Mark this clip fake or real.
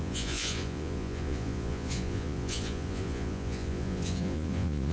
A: fake